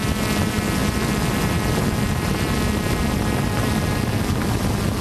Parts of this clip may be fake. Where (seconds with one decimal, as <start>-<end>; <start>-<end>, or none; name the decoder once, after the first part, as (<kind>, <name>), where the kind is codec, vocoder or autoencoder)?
none